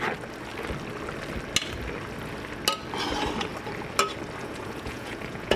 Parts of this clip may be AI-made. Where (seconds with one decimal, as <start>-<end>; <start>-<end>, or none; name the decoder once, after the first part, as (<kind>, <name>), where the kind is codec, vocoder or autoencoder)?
4.4-5.6 (vocoder, Vocos)